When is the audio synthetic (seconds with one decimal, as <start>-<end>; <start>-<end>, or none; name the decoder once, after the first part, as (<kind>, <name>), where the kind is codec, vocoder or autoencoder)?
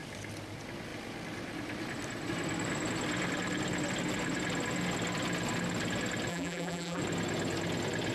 6.3-7.0 (vocoder, BigVGAN v2)